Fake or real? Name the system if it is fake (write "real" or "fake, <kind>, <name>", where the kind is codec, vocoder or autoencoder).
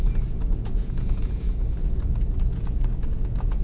fake, vocoder, Vocos